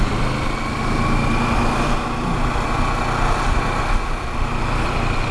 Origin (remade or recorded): recorded